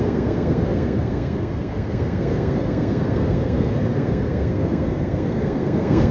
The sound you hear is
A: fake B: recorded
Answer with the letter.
A